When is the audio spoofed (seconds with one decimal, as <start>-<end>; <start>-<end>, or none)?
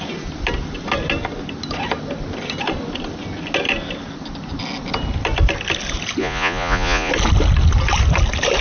6.2-7.1